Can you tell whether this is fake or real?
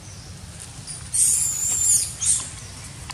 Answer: real